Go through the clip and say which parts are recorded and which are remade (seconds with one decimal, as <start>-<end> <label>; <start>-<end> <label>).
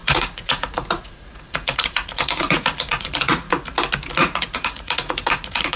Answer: 0.0-3.5 remade; 3.5-4.2 recorded; 4.2-5.8 remade